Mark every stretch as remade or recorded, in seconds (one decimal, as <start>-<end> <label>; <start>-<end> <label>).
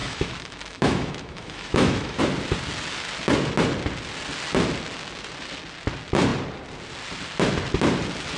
0.0-2.2 remade; 2.2-8.4 recorded